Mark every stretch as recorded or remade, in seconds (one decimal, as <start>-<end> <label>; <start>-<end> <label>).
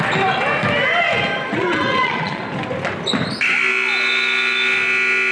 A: 0.0-1.5 recorded; 1.5-2.4 remade; 2.4-5.3 recorded